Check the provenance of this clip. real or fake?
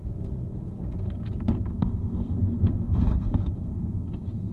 fake